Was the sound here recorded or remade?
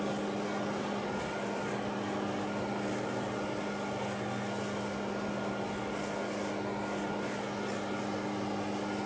recorded